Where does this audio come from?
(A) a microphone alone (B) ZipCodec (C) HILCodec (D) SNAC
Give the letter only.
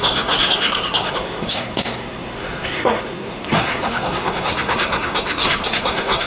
D